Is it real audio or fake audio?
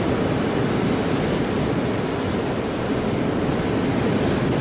real